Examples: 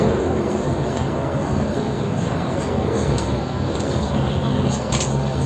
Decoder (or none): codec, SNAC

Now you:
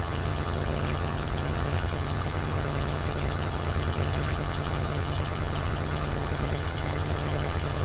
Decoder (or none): vocoder, HiFi-GAN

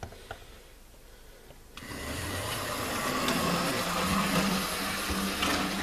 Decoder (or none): none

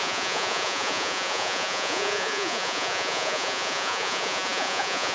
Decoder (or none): vocoder, Vocos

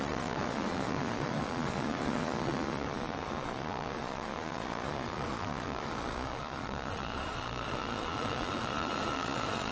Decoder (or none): vocoder, Vocos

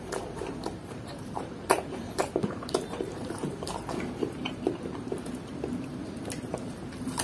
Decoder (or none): vocoder, BigVGAN v2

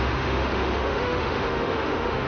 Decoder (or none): autoencoder, DAC-VAE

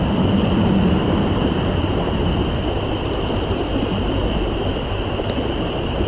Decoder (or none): none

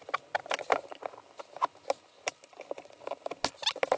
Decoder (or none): none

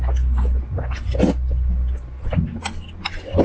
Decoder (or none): none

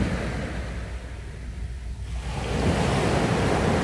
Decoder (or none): none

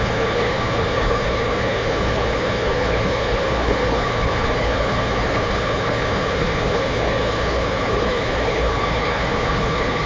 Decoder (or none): codec, HILCodec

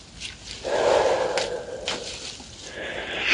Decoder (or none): none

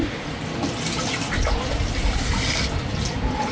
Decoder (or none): none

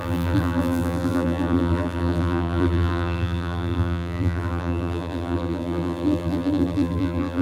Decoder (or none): vocoder, BigVGAN v2